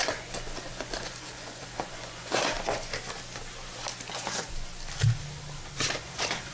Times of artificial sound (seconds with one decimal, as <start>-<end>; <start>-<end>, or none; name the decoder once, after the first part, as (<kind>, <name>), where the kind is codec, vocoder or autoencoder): 0.0-2.9 (vocoder, Vocos); 4.1-4.7; 6.0-6.5